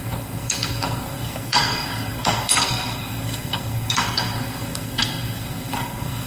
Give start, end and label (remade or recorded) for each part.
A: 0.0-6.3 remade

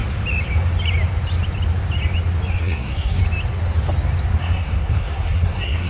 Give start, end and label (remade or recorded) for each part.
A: 0.0-2.6 recorded; 2.6-3.2 remade; 3.2-4.4 recorded; 4.4-5.9 remade

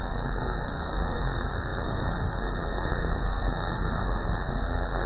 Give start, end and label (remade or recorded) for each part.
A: 0.0-5.1 remade

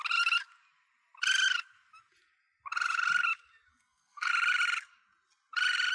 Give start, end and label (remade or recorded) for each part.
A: 0.0-3.7 recorded; 3.7-4.3 remade; 4.3-5.9 recorded

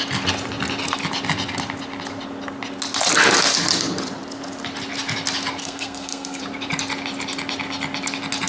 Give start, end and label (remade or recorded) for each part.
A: 0.0-5.6 recorded; 5.6-6.4 remade; 6.4-8.5 recorded

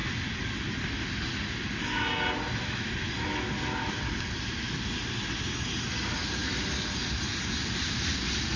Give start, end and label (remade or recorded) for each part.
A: 0.0-8.6 recorded